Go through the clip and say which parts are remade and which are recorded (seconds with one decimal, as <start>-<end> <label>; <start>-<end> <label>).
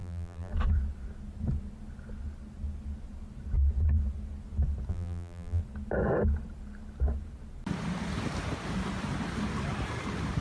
0.0-0.5 remade; 0.5-4.9 recorded; 4.9-5.6 remade; 5.6-10.4 recorded